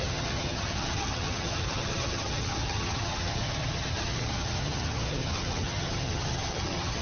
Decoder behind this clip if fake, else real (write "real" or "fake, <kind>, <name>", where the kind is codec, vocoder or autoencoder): fake, vocoder, HiFi-GAN